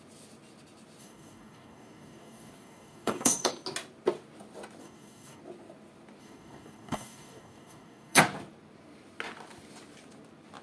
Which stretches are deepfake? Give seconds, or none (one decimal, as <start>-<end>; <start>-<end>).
1.0-3.5; 4.8-5.4; 6.2-8.2